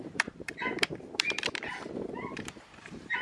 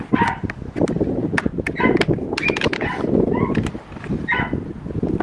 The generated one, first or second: first